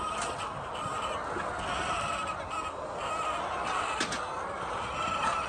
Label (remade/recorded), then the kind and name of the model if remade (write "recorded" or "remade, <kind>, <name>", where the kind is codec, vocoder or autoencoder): recorded